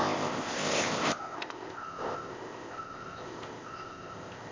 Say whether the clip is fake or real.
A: fake